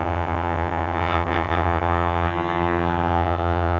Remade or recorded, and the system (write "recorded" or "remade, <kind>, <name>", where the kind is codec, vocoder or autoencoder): remade, vocoder, HiFi-GAN